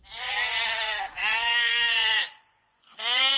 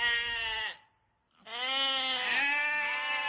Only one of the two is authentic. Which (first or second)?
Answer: second